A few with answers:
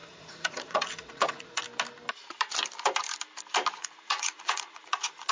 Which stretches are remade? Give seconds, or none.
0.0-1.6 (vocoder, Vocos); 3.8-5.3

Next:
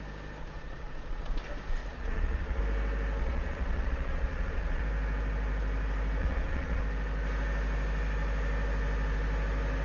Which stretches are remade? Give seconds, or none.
0.4-1.4 (vocoder, Vocos); 1.8-2.6; 3.2-4.8; 6.2-6.8

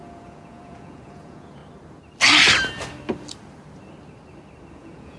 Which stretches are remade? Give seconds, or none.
0.0-1.6 (vocoder, Vocos); 4.7-5.2

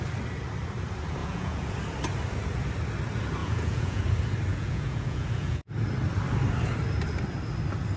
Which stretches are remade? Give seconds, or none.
1.2-1.7 (vocoder, Vocos); 3.4-4.0; 4.5-5.7

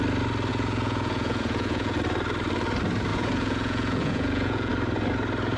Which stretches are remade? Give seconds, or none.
0.5-2.0 (vocoder, Vocos); 3.1-4.7